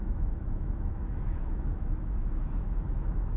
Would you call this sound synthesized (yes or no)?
yes